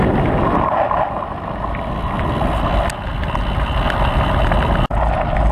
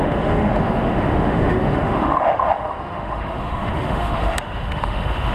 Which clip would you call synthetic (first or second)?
second